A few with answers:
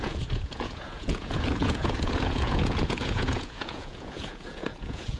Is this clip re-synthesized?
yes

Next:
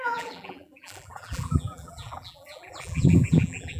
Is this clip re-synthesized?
yes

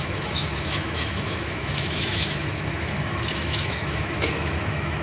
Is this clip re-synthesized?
yes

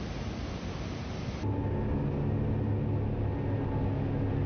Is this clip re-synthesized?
no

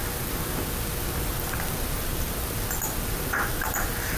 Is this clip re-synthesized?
no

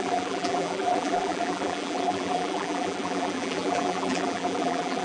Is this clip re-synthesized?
yes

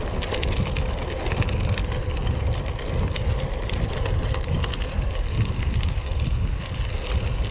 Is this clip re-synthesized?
no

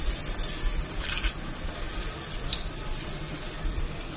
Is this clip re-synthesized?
no